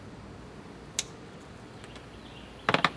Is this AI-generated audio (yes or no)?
no